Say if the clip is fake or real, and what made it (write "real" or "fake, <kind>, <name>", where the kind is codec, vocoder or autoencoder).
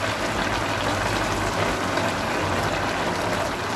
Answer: real